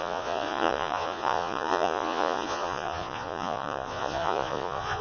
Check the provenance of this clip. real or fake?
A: fake